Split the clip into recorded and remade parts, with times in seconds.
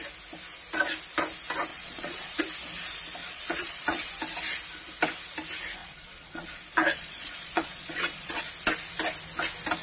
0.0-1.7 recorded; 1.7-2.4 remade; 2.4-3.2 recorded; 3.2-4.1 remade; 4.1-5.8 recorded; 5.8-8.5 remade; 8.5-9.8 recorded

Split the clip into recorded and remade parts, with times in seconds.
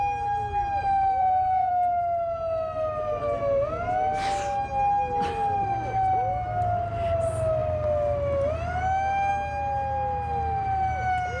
0.0-1.2 recorded; 1.2-1.7 remade; 1.7-11.4 recorded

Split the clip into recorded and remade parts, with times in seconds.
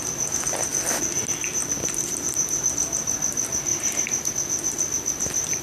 0.0-0.7 remade; 0.7-1.2 recorded; 1.2-1.6 remade; 1.6-2.2 recorded; 2.2-3.7 remade; 3.7-4.3 recorded; 4.3-5.6 remade